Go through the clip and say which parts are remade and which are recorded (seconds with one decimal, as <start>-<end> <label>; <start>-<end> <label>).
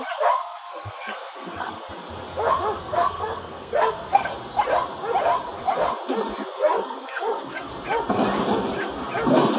0.0-0.4 recorded; 0.4-1.9 remade; 1.9-2.8 recorded; 2.8-4.3 remade; 4.3-6.5 recorded; 6.5-7.7 remade; 7.7-9.6 recorded